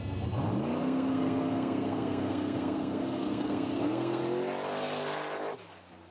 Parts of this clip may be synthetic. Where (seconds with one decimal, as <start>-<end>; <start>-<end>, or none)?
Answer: 0.8-4.2